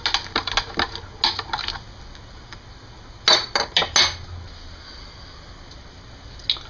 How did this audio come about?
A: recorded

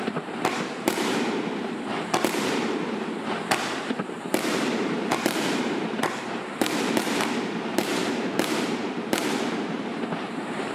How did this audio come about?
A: remade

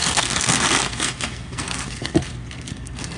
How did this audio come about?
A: remade